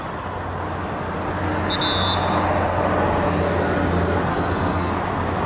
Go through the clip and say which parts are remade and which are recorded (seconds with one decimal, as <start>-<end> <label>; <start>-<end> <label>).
0.0-4.3 recorded; 4.3-4.9 remade; 4.9-5.5 recorded